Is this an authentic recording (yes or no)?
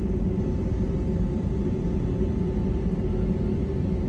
yes